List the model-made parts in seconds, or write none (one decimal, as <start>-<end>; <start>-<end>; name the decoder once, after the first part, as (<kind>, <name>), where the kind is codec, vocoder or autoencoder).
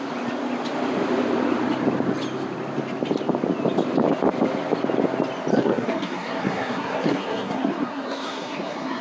5.5-9.0 (codec, SNAC)